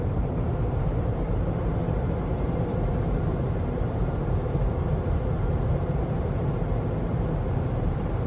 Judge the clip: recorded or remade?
remade